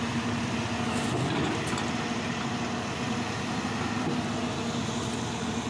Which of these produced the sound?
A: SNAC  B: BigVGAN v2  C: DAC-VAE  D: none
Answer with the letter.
D